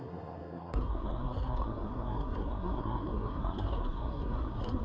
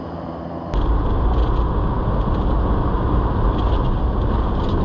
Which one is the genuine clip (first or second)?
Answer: second